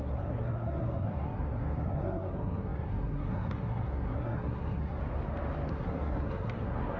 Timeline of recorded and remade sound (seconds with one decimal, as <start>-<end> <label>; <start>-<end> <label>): 0.0-5.0 remade; 5.0-5.7 recorded; 5.7-7.0 remade